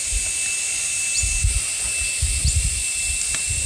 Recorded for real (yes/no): yes